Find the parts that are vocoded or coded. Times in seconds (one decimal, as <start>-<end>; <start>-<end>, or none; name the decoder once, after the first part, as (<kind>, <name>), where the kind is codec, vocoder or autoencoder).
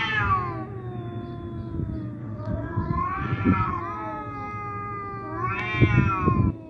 2.2-3.8 (vocoder, WaveNeXt)